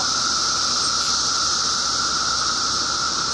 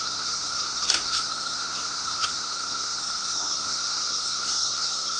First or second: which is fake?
second